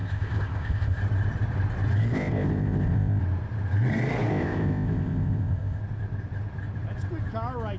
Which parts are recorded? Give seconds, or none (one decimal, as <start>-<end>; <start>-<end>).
1.0-2.0; 3.2-4.3; 5.8-7.8